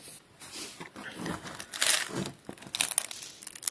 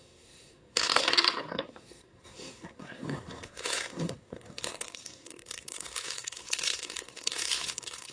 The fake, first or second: second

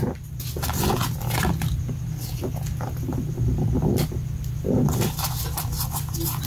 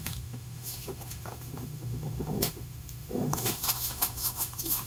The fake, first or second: second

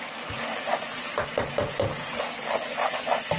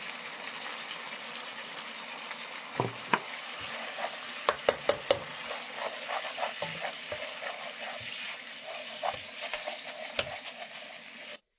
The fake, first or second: second